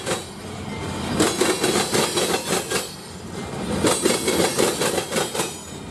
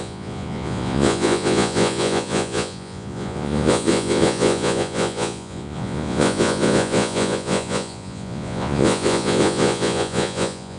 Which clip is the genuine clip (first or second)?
first